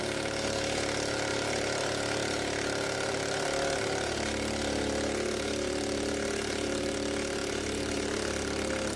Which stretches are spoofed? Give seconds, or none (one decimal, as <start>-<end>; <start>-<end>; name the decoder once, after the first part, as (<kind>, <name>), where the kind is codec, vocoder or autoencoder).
none